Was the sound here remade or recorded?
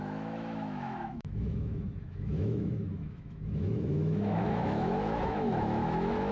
remade